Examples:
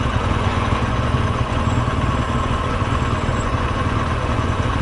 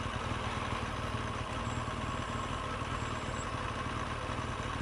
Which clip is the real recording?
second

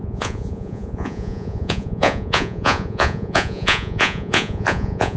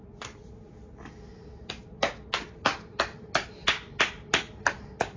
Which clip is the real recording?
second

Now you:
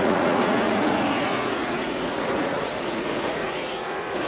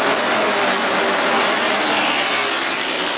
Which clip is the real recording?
second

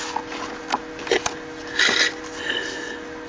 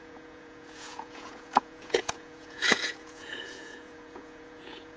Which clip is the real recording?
first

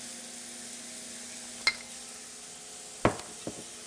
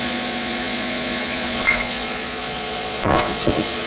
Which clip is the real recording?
first